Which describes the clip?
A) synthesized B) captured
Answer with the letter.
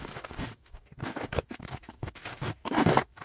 A